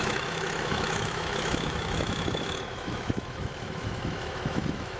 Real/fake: fake